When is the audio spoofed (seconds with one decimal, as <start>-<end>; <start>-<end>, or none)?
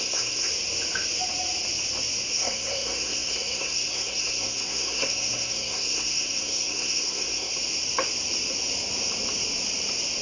0.0-0.5; 2.3-7.5